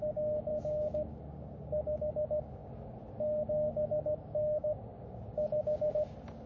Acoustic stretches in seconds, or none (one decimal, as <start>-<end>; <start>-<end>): none